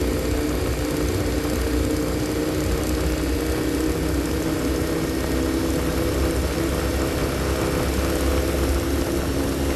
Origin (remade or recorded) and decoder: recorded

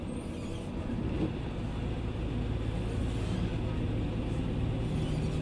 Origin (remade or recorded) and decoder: recorded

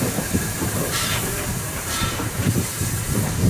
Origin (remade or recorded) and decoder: remade, vocoder, BigVGAN v2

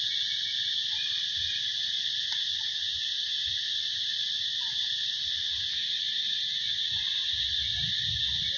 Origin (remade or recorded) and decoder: recorded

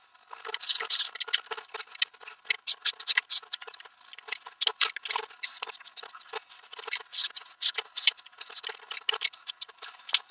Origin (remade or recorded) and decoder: recorded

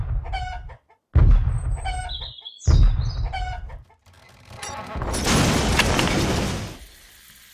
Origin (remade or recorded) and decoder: recorded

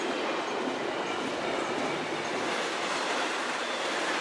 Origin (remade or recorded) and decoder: recorded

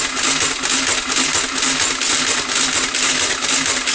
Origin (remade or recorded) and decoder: recorded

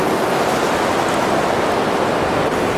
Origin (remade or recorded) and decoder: recorded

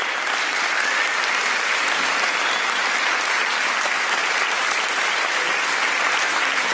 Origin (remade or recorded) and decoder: remade, vocoder, BigVGAN v2